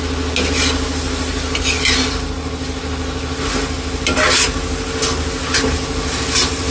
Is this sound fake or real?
real